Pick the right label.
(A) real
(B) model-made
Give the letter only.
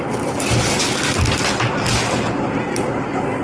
A